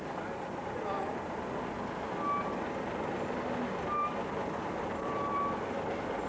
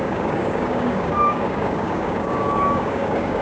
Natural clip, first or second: first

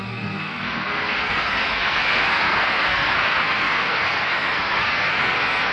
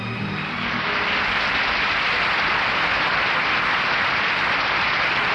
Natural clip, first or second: second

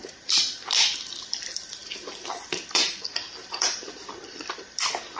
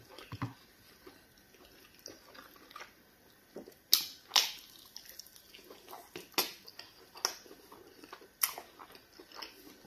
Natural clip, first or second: second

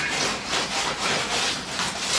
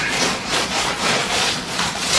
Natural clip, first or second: first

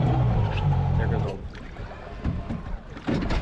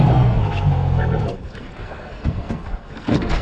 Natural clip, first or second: first